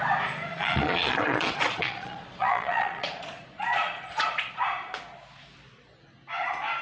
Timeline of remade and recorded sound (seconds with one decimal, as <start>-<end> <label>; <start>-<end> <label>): 0.0-0.5 recorded; 0.5-4.6 remade; 4.6-6.8 recorded